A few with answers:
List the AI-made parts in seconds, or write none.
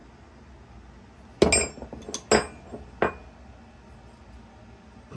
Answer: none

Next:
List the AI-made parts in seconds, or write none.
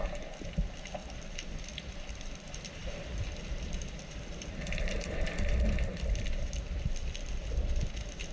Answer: 1.0-1.7; 2.8-5.4; 5.9-7.7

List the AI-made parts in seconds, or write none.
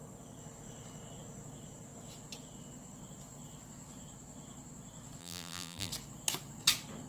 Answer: 5.2-5.9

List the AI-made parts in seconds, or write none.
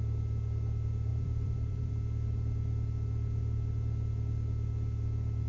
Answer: 1.1-1.9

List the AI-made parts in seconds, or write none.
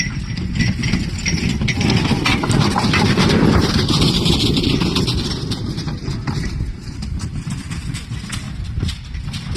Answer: 5.1-6.5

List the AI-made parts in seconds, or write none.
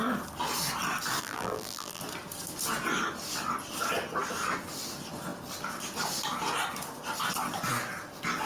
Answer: 1.2-2.0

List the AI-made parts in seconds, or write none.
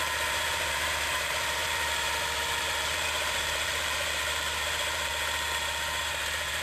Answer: 0.0-5.1; 6.0-6.6